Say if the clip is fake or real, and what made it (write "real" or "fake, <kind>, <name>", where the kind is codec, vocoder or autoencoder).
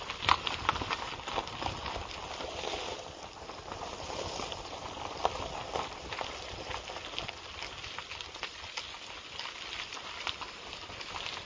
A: real